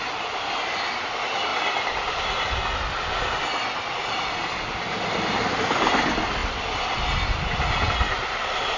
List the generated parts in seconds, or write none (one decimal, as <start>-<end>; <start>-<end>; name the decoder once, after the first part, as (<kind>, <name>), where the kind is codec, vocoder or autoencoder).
none